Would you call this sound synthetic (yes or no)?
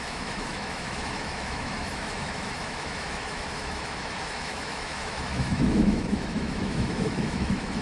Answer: yes